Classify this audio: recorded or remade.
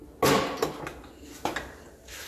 recorded